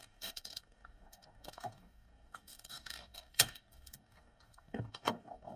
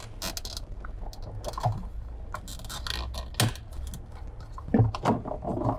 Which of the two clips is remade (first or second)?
first